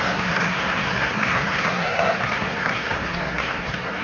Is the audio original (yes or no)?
no